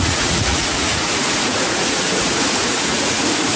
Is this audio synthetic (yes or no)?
yes